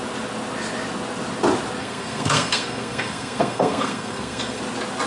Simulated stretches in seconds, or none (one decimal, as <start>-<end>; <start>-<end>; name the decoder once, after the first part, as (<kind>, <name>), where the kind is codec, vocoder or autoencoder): 1.8-4.6 (codec, SNAC)